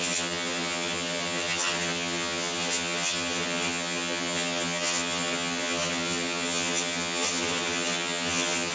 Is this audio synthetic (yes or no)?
yes